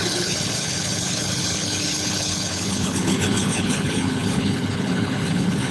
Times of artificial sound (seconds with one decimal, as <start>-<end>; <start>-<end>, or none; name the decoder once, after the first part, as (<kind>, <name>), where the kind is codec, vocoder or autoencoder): 0.0-5.7 (codec, HILCodec)